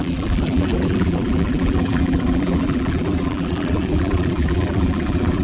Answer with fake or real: fake